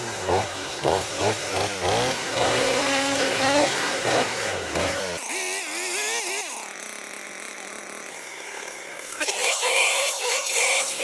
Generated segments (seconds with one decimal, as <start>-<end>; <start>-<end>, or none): 0.0-1.5; 2.1-5.0; 8.1-11.0